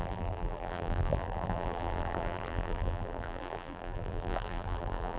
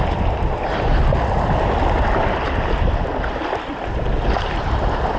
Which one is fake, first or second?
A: first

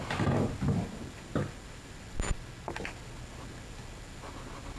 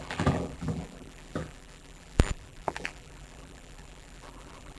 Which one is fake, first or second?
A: second